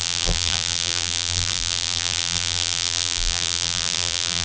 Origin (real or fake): fake